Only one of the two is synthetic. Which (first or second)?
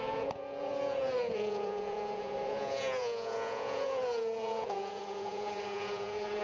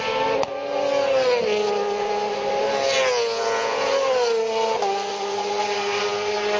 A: first